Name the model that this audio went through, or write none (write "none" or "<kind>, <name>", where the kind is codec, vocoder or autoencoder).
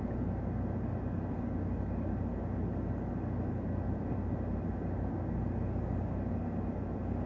none